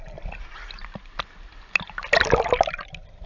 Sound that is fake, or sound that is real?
real